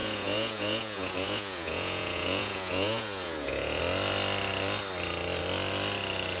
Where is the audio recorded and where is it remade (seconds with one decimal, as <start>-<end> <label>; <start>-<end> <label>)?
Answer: 0.0-3.8 remade; 3.8-6.4 recorded